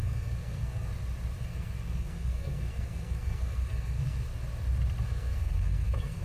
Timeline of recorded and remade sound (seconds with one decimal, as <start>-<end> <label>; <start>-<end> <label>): 0.0-0.9 remade; 0.9-1.4 recorded; 1.4-4.3 remade; 4.3-5.0 recorded; 5.0-6.2 remade